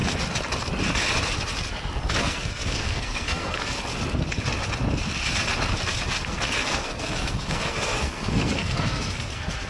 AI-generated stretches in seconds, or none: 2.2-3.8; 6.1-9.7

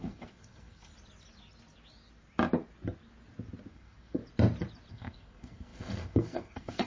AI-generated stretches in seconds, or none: 0.0-0.9; 3.7-4.2; 4.9-6.9

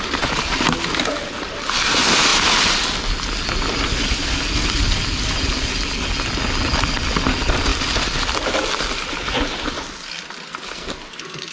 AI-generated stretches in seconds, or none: 10.5-11.5

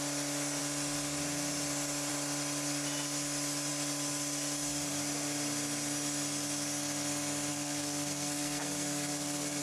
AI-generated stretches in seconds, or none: 7.5-9.6

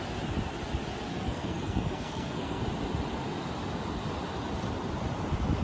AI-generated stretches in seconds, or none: 1.1-2.6